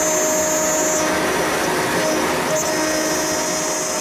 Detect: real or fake real